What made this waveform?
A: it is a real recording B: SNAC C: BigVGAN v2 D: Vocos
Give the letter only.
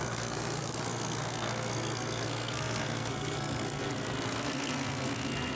B